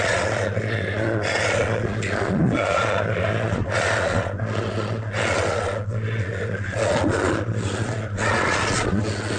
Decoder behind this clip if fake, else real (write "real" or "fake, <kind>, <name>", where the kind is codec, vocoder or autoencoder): fake, vocoder, Vocos